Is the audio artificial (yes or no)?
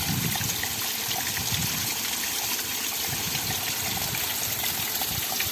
no